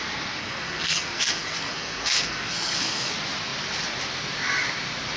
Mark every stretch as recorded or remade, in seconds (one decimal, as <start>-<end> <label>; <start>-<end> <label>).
0.0-0.4 recorded; 0.4-3.1 remade; 3.1-5.2 recorded